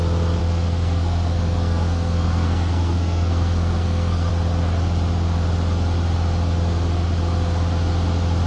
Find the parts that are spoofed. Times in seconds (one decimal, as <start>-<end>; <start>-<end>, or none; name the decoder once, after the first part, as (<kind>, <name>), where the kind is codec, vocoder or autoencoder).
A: 0.4-4.3 (codec, SNAC)